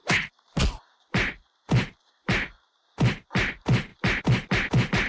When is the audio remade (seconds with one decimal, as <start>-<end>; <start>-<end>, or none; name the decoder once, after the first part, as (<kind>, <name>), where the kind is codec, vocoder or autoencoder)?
none